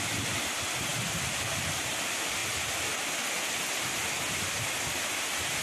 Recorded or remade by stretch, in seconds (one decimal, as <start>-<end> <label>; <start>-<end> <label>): 0.0-5.6 recorded